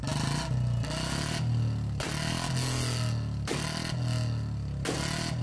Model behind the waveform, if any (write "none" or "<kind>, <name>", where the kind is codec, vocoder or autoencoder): none